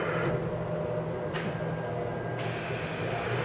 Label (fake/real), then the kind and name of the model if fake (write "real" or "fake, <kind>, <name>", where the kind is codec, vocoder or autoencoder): real